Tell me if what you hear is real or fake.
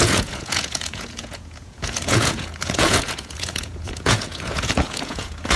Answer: fake